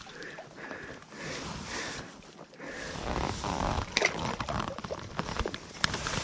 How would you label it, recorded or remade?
recorded